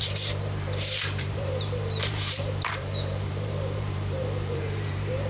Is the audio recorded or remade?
remade